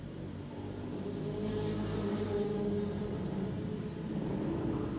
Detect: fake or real real